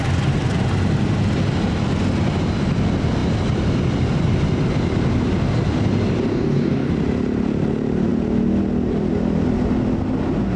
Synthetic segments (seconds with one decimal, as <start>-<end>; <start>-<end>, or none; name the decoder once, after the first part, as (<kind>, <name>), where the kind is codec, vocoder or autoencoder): 6.3-6.9 (codec, DAC)